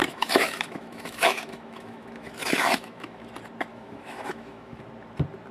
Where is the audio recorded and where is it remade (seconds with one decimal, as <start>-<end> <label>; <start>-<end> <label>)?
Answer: 0.0-3.3 remade; 3.3-3.7 recorded; 3.7-4.8 remade; 4.8-5.5 recorded